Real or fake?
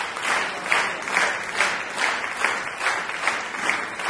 real